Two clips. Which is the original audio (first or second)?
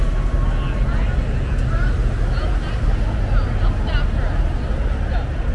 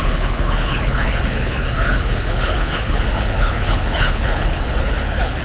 first